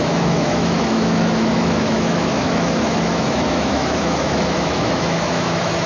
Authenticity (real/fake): fake